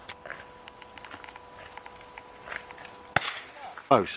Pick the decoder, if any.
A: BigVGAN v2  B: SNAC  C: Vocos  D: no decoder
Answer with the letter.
D